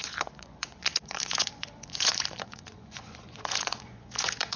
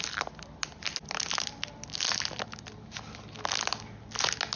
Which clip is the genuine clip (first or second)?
second